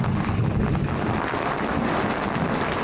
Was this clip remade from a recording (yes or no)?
no